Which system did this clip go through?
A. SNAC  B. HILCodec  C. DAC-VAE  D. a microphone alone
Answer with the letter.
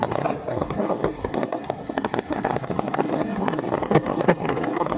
A